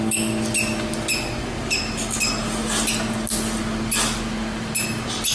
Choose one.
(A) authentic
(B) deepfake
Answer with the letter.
A